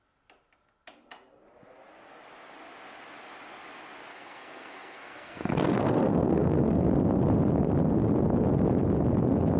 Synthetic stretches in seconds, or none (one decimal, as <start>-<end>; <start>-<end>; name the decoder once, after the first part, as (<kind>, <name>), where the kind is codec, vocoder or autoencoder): 4.1-6.8 (codec, SNAC)